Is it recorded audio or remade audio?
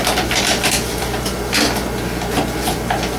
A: recorded